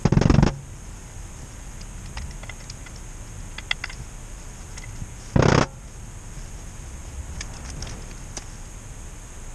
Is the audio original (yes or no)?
yes